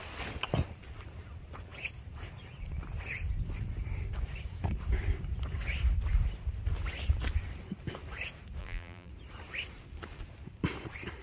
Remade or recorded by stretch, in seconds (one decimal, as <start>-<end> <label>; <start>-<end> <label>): 0.0-8.6 recorded; 8.6-9.1 remade; 9.1-11.2 recorded